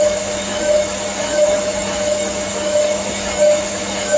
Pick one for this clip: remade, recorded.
remade